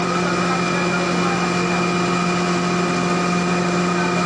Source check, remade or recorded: recorded